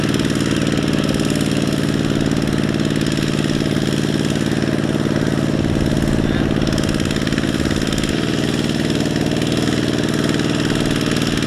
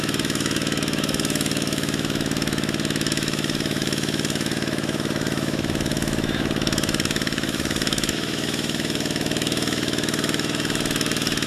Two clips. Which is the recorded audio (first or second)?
first